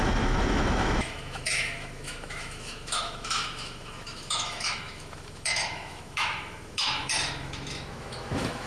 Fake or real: fake